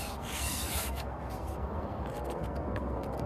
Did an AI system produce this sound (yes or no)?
yes